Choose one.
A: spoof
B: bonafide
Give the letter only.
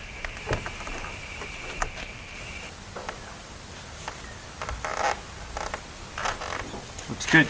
B